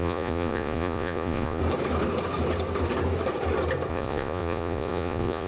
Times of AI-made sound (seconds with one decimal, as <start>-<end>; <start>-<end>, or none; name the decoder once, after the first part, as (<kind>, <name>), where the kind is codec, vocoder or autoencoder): 0.0-1.6 (vocoder, Vocos); 3.9-5.5